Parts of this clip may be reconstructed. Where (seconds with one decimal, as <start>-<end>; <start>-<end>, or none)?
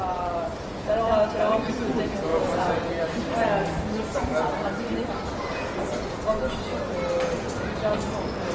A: none